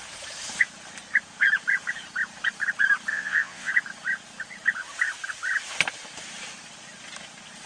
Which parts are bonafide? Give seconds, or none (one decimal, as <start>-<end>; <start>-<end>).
0.0-3.1; 3.7-7.7

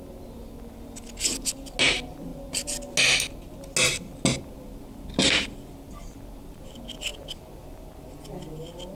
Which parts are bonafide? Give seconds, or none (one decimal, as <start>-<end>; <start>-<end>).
0.0-8.9